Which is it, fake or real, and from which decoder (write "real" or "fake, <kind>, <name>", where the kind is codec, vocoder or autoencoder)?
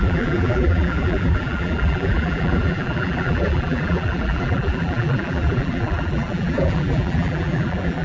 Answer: fake, vocoder, BigVGAN v2